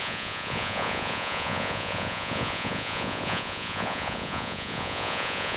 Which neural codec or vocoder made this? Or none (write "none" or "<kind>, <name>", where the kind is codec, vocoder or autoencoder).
vocoder, Vocos